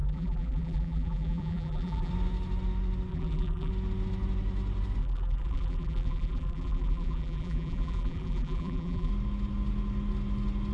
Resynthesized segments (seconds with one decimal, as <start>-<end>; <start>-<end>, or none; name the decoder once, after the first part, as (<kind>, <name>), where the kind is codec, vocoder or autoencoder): 0.0-2.1 (vocoder, BigVGAN v2); 3.1-3.7; 5.0-9.1